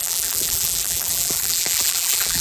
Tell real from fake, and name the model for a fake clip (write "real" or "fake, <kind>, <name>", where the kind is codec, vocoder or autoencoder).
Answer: fake, vocoder, BigVGAN v2